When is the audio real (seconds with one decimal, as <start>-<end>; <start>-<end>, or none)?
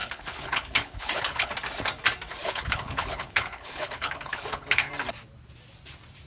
1.5-2.4; 4.9-6.3